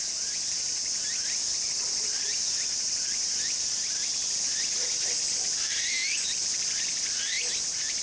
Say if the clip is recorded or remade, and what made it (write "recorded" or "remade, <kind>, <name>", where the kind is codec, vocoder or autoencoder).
recorded